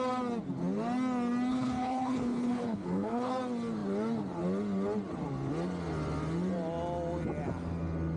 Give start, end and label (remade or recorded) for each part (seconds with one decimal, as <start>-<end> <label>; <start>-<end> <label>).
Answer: 0.0-1.5 recorded; 1.5-3.3 remade; 3.3-8.2 recorded